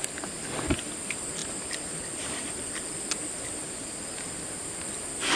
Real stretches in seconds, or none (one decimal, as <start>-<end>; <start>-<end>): 0.0-5.4